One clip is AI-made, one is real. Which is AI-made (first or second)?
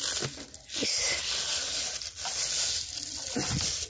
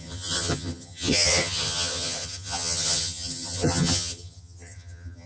second